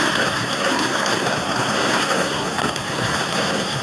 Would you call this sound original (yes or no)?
no